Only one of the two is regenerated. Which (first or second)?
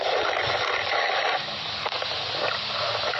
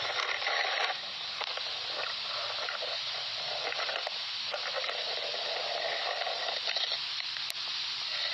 second